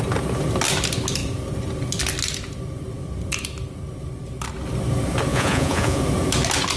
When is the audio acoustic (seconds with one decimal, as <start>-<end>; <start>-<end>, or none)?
0.0-5.3; 6.0-6.8